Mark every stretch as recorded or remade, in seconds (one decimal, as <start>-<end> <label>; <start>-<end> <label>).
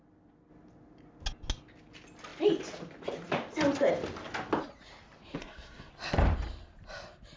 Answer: 0.0-5.4 recorded; 5.4-5.9 remade; 5.9-7.4 recorded